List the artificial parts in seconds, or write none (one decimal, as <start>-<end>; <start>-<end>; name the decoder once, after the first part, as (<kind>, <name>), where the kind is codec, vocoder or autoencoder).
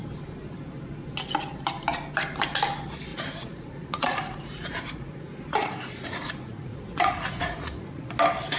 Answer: 3.1-8.0 (vocoder, Vocos)